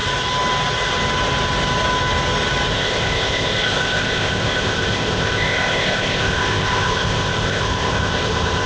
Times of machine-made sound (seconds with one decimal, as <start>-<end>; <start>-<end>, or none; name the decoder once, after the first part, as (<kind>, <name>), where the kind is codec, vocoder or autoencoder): 2.7-8.7 (codec, ZipCodec)